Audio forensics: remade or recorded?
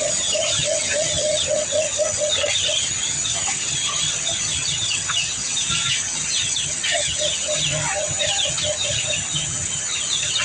remade